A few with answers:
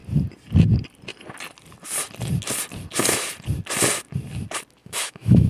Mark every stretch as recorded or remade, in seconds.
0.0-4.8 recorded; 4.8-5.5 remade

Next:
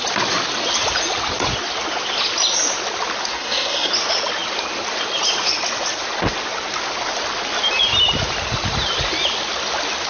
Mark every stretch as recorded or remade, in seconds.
0.0-3.3 recorded; 3.3-3.9 remade; 3.9-10.1 recorded

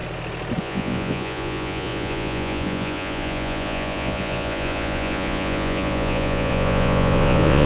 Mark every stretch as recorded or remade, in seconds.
0.0-0.6 recorded; 0.6-7.7 remade

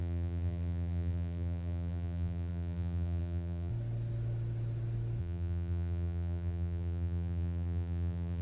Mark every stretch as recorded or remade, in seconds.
0.0-3.7 remade; 3.7-5.2 recorded; 5.2-8.4 remade

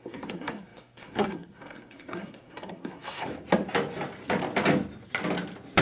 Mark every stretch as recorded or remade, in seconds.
0.0-3.3 remade; 3.3-5.8 recorded

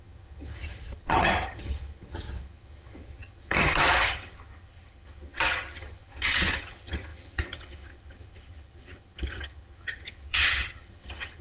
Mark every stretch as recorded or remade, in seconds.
0.0-11.4 remade

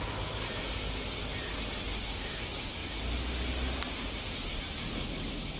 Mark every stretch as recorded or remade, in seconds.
0.0-5.6 recorded

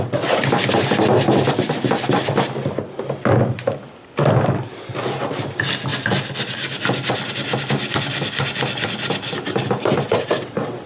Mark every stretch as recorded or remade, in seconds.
0.0-10.1 recorded; 10.1-10.9 remade